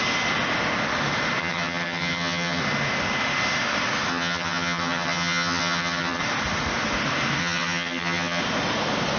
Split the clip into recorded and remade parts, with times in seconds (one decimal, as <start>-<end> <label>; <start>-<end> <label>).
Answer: 0.0-1.4 recorded; 1.4-2.6 remade; 2.6-4.1 recorded; 4.1-6.2 remade; 6.2-7.4 recorded; 7.4-8.4 remade; 8.4-9.2 recorded